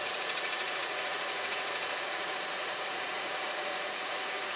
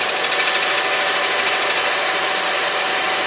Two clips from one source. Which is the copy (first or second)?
first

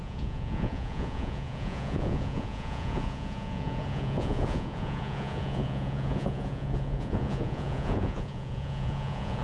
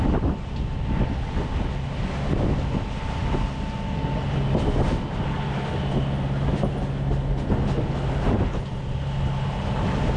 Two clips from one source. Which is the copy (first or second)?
first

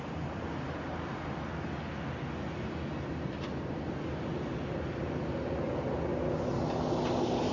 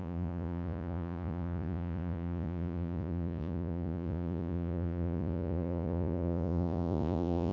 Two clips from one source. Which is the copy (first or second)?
second